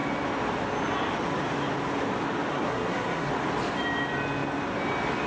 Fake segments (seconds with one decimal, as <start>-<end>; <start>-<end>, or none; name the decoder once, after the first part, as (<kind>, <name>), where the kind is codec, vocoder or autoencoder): 2.5-3.3 (codec, SNAC)